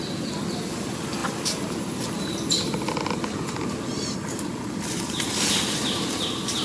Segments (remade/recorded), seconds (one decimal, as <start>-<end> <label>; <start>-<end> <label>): 0.0-6.6 recorded